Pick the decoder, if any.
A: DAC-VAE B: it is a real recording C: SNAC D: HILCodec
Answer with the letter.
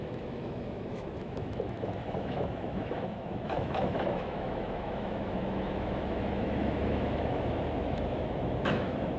A